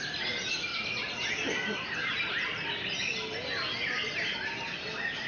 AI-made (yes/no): no